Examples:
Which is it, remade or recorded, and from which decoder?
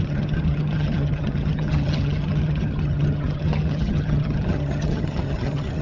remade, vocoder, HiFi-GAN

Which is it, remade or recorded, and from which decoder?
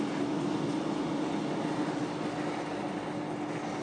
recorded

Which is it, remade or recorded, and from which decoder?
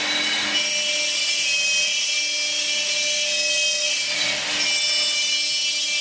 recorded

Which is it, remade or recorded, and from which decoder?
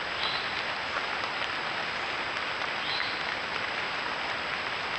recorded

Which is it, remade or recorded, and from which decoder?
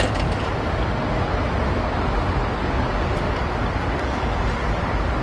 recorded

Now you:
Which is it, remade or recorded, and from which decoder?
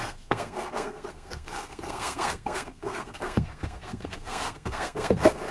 remade, codec, SNAC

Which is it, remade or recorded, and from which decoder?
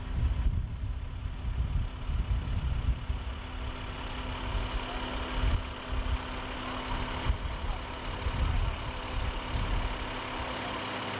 recorded